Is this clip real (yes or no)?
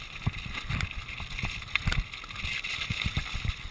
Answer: yes